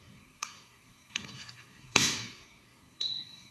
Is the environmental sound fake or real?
fake